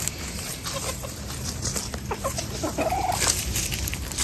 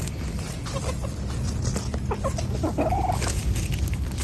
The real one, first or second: second